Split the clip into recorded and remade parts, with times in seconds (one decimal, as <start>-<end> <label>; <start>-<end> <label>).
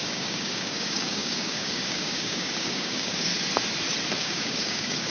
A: 0.0-3.3 remade; 3.3-4.2 recorded; 4.2-5.1 remade